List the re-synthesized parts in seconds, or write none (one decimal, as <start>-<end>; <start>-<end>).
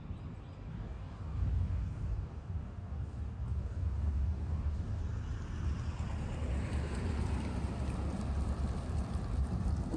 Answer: 0.7-5.0